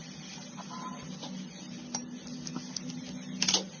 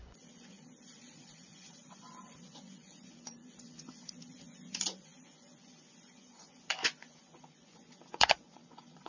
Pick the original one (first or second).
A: first